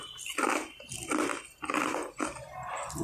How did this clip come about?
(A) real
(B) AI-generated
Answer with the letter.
A